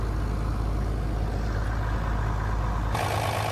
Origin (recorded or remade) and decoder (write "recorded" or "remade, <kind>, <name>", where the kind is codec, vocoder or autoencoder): recorded